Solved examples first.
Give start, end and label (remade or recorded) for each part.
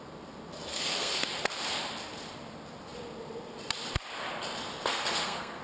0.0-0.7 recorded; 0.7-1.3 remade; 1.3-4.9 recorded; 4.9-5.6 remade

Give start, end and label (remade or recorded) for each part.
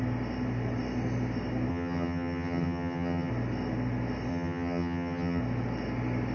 0.0-1.7 recorded; 1.7-3.3 remade; 3.3-4.3 recorded; 4.3-5.4 remade; 5.4-6.3 recorded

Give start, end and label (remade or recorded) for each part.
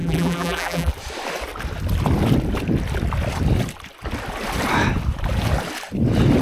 0.0-0.9 remade; 0.9-6.4 recorded